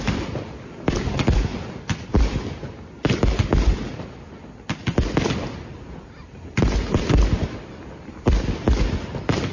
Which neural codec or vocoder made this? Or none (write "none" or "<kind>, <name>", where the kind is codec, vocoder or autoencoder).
none